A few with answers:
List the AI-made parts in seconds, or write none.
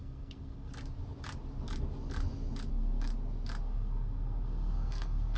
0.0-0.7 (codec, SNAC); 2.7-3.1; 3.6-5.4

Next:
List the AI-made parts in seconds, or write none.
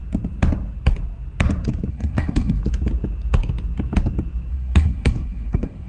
1.9-2.6 (codec, SNAC); 4.5-5.9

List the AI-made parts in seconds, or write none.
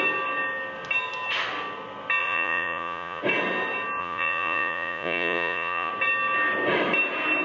2.2-3.2 (vocoder, Vocos); 4.0-5.9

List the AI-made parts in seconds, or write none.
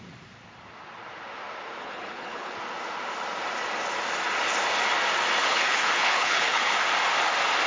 1.8-2.5 (codec, HILCodec); 5.4-6.7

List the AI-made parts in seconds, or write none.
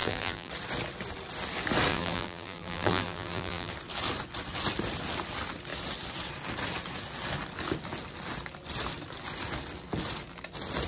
0.0-0.5 (vocoder, BigVGAN v2); 1.9-3.7